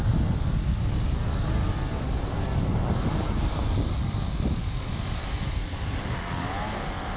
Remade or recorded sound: recorded